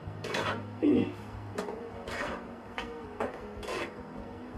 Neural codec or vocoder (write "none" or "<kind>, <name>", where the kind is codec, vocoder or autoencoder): codec, SNAC